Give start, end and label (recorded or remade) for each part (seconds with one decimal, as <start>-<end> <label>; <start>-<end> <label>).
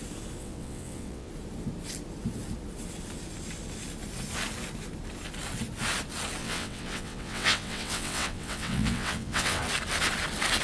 0.0-0.4 recorded; 0.4-1.3 remade; 1.3-6.4 recorded; 6.4-9.6 remade; 9.6-10.6 recorded